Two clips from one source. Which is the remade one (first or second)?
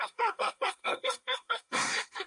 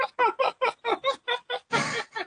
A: first